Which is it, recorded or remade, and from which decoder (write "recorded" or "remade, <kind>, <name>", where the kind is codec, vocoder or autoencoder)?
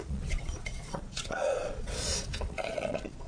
remade, vocoder, Vocos